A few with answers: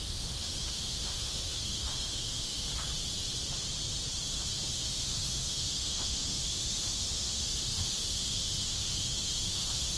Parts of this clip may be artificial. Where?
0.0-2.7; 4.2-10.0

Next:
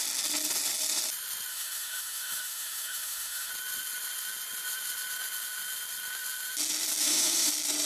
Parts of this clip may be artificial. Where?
1.5-3.5; 7.0-7.5

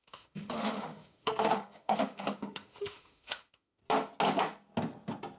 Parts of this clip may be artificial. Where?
0.0-3.8

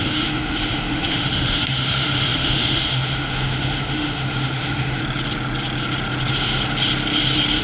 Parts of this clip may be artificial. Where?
0.0-5.0